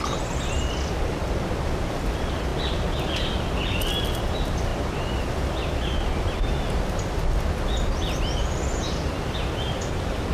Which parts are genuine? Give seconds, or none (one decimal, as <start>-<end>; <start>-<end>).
0.0-10.3